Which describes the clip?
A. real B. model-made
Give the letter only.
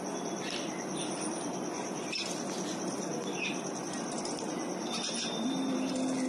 A